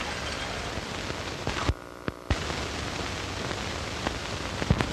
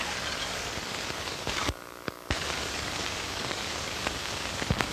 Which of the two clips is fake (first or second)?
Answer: second